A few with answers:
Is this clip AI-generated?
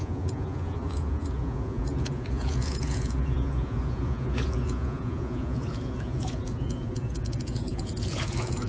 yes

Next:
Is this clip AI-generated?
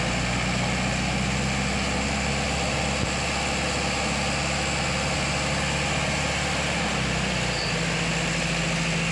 no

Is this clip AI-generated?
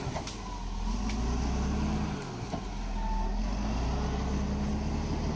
no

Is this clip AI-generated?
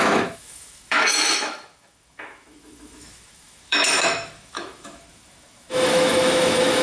yes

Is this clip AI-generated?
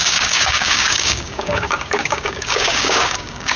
yes